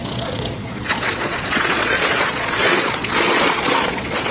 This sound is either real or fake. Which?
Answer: fake